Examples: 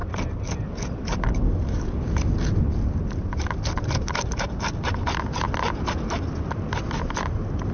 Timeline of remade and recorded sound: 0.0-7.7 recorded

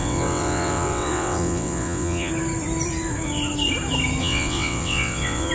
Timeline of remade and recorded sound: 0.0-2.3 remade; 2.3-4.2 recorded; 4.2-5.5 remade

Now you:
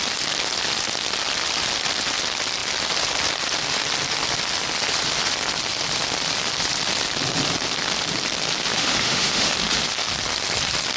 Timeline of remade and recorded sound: 0.0-8.7 recorded; 8.7-9.5 remade; 9.5-11.0 recorded